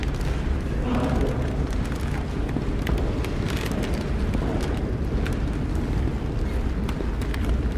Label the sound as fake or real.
real